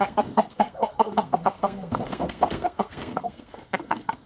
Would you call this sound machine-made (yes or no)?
yes